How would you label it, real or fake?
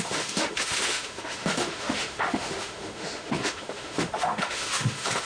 fake